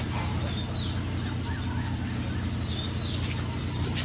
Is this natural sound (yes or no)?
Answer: yes